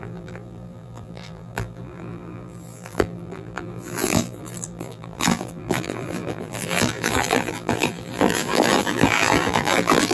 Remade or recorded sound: remade